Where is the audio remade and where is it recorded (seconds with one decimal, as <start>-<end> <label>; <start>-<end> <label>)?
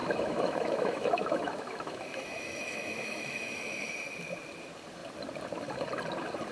0.0-3.9 remade; 3.9-6.5 recorded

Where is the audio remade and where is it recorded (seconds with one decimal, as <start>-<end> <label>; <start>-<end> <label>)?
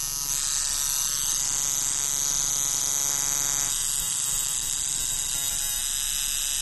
0.0-4.0 recorded; 4.0-5.8 remade; 5.8-6.6 recorded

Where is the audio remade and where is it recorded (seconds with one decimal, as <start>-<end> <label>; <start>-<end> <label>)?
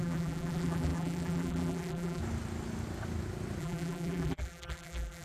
0.0-2.2 remade; 2.2-3.6 recorded; 3.6-5.2 remade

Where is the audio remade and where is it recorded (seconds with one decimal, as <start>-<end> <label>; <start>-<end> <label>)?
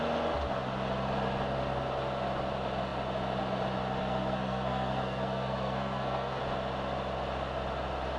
0.0-4.0 recorded; 4.0-6.4 remade; 6.4-8.2 recorded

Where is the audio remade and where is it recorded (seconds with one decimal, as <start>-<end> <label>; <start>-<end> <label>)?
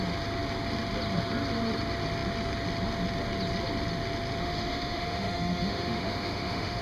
0.0-4.4 recorded; 4.4-6.8 remade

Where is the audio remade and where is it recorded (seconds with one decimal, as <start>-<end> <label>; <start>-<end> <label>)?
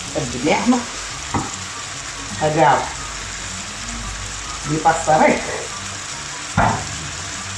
0.0-0.4 recorded; 0.4-1.1 remade; 1.1-7.6 recorded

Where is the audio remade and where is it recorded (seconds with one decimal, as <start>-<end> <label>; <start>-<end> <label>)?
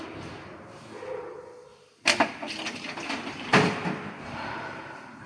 0.0-5.3 recorded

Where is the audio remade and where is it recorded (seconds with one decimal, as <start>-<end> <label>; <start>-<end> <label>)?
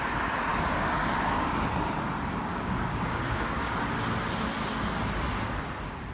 0.0-0.5 recorded; 0.5-1.7 remade; 1.7-2.5 recorded; 2.5-3.8 remade; 3.8-6.1 recorded